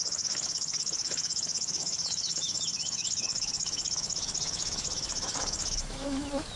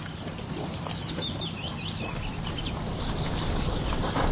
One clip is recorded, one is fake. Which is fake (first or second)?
first